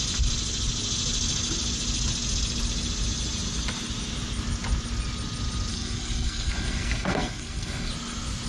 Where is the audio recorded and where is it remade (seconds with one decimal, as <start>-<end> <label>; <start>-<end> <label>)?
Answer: 0.0-5.7 recorded; 5.7-7.9 remade; 7.9-8.5 recorded